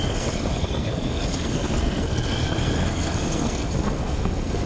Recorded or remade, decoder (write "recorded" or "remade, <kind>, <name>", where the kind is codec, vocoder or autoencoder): remade, codec, SNAC